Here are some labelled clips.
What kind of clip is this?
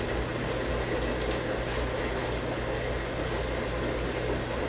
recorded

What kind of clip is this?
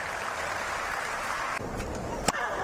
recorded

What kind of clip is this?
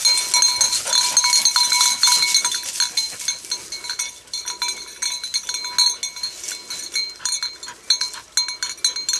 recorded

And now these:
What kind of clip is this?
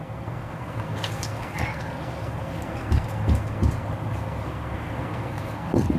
remade